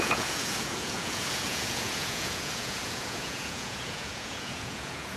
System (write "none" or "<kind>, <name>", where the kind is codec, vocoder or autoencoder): vocoder, Vocos